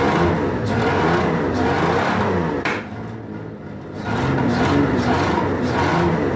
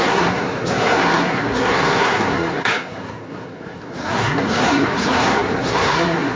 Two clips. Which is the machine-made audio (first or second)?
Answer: second